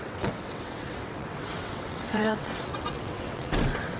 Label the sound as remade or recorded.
remade